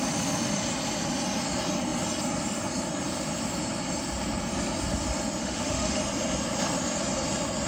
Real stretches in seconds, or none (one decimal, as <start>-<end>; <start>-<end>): 0.0-5.4; 6.0-7.7